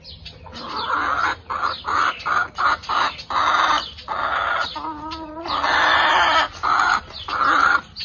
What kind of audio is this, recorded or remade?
recorded